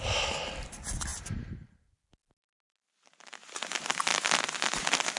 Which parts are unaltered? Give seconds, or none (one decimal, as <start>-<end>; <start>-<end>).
0.0-5.2